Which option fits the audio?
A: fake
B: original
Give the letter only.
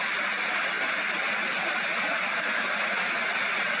B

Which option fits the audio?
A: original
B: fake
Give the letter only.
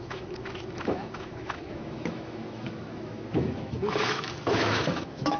B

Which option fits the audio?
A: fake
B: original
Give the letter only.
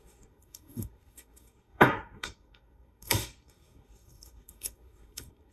A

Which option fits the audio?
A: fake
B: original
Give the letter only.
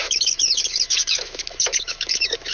A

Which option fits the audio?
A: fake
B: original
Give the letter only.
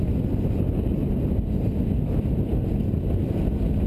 B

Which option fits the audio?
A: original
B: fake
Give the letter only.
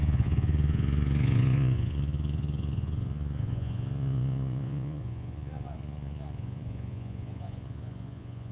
B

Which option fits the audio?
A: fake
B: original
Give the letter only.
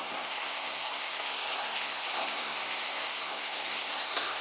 A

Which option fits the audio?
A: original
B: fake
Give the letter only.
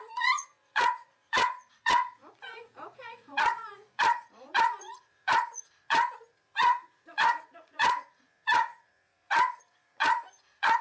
B